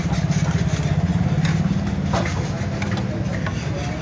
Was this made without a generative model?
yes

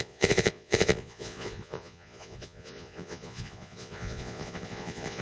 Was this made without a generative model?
no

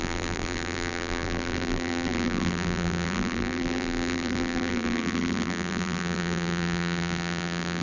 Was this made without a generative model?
no